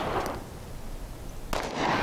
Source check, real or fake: real